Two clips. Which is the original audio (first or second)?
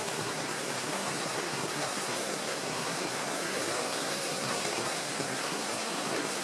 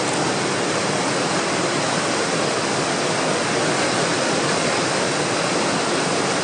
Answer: second